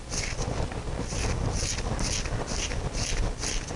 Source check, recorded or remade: recorded